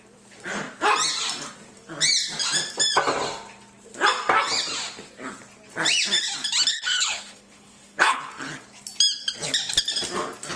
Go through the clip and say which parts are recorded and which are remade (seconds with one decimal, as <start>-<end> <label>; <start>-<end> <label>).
0.0-6.7 recorded; 6.7-8.3 remade; 8.3-10.6 recorded